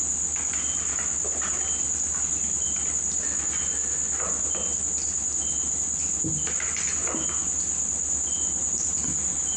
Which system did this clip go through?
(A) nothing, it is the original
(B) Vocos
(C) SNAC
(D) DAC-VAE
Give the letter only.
A